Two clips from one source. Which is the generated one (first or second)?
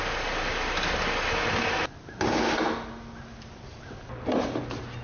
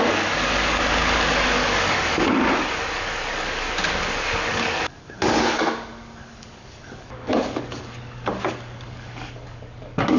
second